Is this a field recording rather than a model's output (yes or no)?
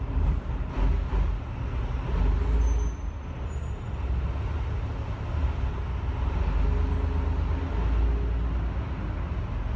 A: yes